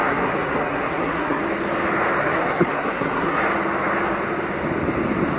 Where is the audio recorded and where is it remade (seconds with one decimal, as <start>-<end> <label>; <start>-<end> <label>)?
0.0-1.4 remade; 1.4-2.2 recorded; 2.2-3.4 remade; 3.4-5.4 recorded